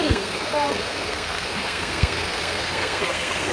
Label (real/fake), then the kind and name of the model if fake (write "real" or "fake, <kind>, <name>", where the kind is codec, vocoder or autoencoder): fake, codec, SNAC